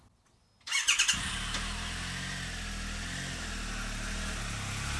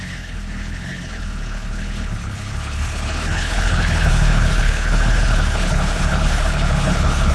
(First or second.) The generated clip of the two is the second